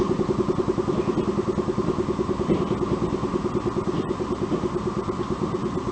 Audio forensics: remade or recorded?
recorded